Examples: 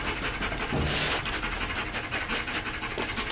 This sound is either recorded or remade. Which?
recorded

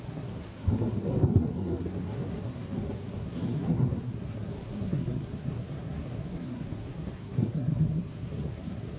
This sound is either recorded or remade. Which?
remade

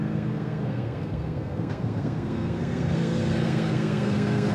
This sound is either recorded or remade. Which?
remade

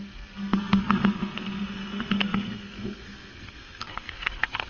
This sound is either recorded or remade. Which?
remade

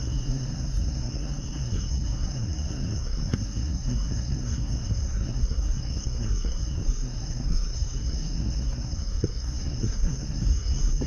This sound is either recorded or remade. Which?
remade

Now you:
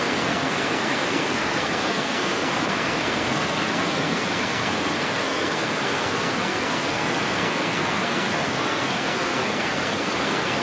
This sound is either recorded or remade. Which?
remade